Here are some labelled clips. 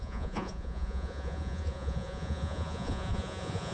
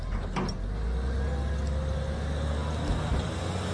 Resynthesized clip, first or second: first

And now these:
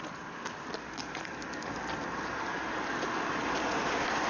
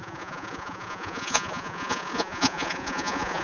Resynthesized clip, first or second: second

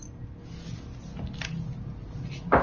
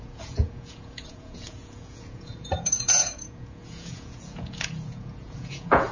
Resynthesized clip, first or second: second